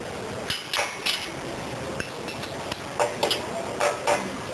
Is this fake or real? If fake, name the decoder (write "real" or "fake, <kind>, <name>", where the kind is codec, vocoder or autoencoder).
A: real